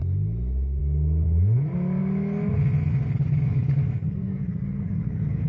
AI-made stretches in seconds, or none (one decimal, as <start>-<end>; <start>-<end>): 3.5-5.5